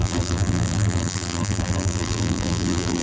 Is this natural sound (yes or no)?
no